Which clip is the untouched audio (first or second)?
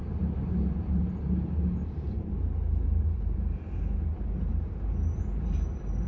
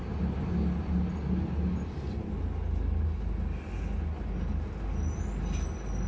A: second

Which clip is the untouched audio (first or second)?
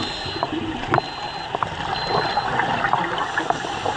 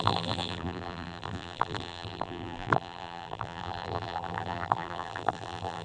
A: first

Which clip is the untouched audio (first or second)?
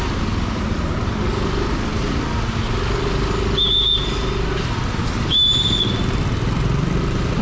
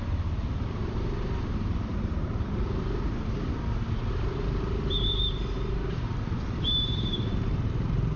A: first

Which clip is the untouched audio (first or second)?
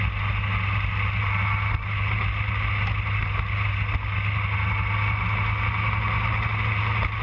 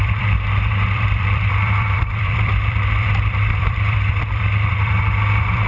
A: first